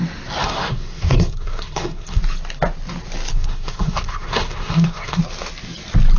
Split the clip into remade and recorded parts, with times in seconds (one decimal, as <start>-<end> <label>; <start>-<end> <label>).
0.0-0.4 recorded; 0.4-2.2 remade; 2.2-3.3 recorded; 3.3-5.2 remade; 5.2-6.2 recorded